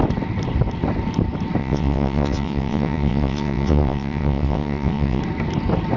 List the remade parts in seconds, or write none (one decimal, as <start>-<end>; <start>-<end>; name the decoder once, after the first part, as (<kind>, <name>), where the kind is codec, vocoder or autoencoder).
1.6-5.2 (vocoder, WaveNeXt)